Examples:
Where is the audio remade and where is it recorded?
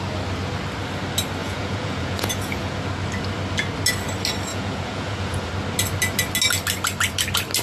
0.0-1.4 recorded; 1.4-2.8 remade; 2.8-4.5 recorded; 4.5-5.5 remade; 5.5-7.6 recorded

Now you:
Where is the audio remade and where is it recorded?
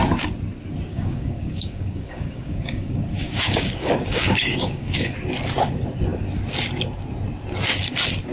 0.0-0.9 recorded; 0.9-5.1 remade; 5.1-8.3 recorded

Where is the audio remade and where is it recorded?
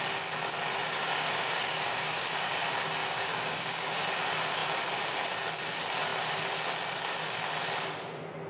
0.0-0.8 recorded; 0.8-2.5 remade; 2.5-3.0 recorded; 3.0-4.0 remade; 4.0-8.5 recorded